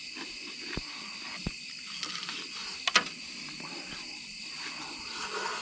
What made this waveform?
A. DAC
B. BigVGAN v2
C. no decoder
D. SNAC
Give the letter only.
C